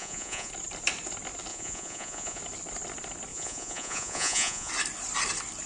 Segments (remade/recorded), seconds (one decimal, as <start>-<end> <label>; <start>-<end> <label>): 0.0-0.5 remade; 0.5-1.5 recorded; 1.5-2.4 remade; 2.4-3.3 recorded; 3.3-4.7 remade; 4.7-5.7 recorded